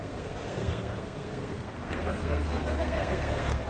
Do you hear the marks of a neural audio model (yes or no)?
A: yes